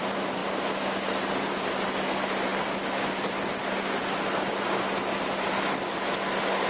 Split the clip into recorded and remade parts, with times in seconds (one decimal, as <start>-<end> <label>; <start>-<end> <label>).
0.0-6.7 recorded